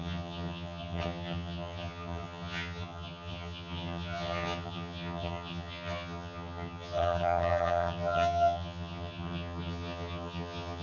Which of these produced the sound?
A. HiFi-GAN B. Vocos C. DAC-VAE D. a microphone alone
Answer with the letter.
A